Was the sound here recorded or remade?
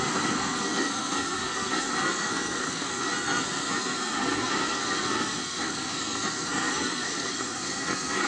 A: remade